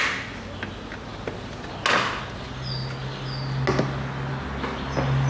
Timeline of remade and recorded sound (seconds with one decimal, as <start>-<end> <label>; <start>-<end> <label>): 0.0-5.3 recorded